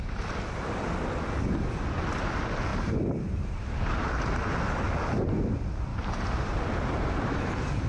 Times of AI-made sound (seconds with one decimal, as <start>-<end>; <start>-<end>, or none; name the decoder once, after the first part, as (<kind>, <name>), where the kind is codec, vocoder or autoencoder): 2.7-4.2 (vocoder, BigVGAN v2); 5.9-6.6